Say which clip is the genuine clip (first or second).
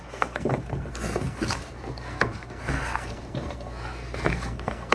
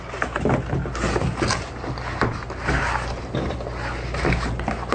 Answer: second